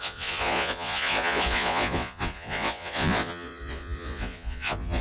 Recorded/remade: remade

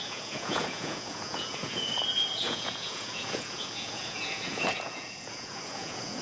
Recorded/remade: remade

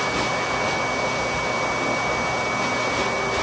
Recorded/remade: recorded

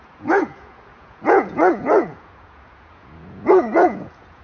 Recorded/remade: remade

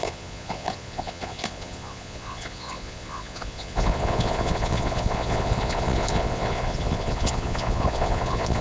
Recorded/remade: remade